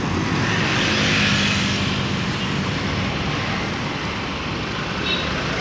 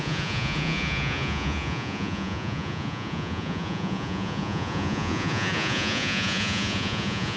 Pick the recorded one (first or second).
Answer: first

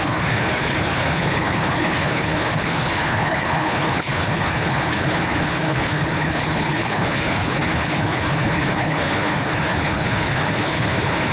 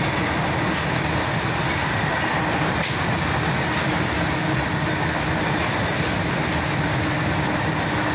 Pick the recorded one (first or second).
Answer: second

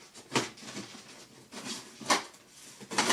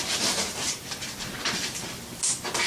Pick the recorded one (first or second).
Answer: first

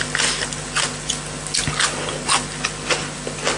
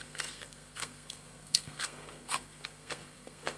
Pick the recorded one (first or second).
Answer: first